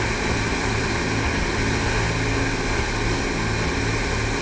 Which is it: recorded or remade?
recorded